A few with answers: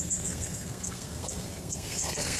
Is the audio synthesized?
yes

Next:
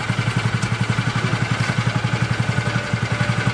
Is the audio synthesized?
no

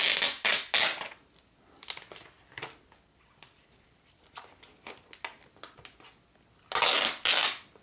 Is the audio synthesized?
no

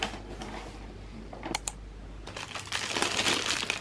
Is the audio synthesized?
no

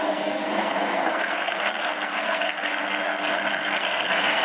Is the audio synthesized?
yes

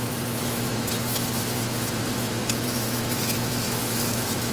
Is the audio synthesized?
yes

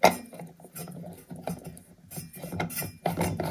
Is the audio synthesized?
no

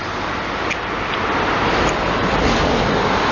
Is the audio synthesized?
yes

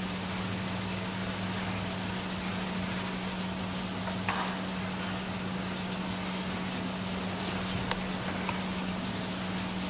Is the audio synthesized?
no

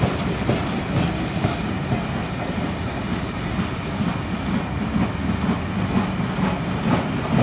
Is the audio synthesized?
no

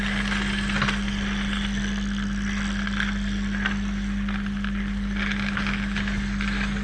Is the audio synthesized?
no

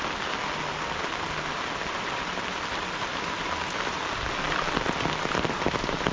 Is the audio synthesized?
no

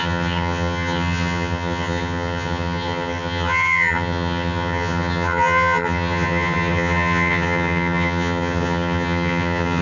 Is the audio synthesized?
yes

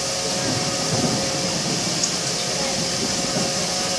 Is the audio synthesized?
no